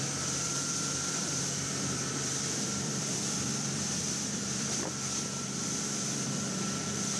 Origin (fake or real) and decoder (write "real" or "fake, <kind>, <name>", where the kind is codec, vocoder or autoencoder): fake, vocoder, BigVGAN v2